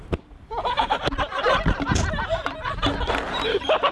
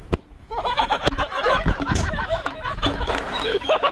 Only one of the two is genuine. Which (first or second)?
first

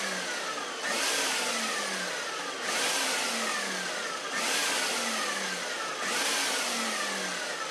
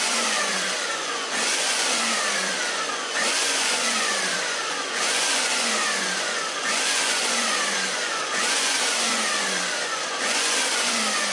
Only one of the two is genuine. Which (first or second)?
first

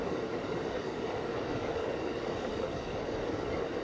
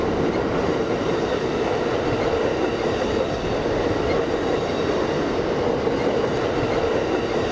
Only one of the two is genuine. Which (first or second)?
second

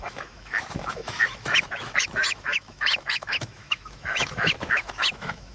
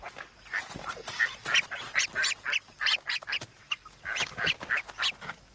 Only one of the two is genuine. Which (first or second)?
second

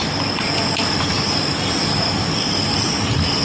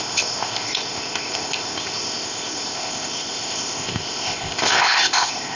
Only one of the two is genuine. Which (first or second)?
first